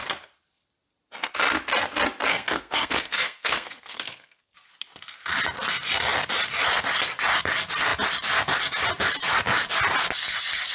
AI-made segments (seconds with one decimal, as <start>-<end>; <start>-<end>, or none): 2.3-4.5